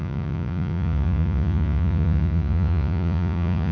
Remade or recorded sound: remade